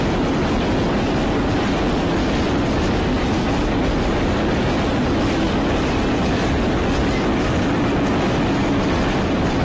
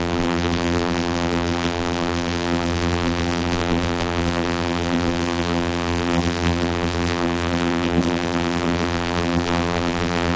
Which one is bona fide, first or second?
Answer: first